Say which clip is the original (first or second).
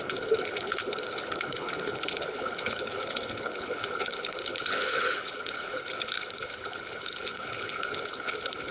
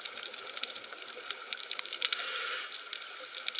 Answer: second